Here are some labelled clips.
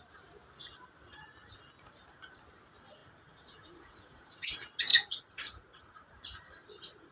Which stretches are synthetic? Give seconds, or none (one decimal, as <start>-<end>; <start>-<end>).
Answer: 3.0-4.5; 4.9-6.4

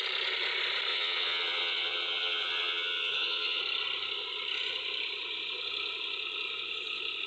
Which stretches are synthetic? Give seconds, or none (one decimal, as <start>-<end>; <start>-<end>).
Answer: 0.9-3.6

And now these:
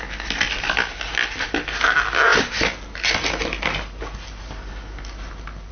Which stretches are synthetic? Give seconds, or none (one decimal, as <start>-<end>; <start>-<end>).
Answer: none

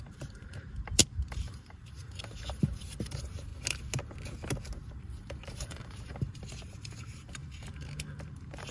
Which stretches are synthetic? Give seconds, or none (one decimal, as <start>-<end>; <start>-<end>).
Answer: 0.0-3.5; 5.0-8.7

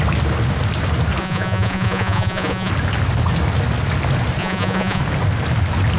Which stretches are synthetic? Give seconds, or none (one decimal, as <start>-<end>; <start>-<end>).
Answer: 1.2-2.7; 4.4-5.0

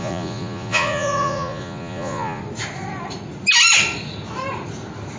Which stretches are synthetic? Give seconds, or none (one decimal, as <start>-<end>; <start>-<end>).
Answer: 0.0-2.4